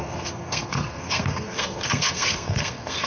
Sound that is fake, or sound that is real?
fake